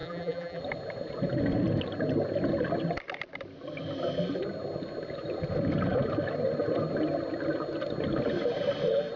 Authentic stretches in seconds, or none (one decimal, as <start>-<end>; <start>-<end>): 0.6-9.2